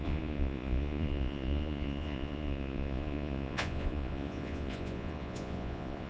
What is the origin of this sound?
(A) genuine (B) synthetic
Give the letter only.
B